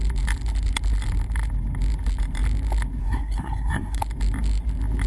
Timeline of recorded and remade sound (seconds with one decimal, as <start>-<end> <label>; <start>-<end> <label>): 0.0-3.0 recorded; 3.0-4.0 remade; 4.0-5.1 recorded